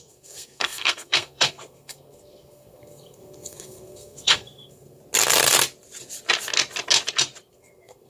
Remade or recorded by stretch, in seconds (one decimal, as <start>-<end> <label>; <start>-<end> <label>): 0.0-5.0 remade; 5.0-7.5 recorded; 7.5-8.1 remade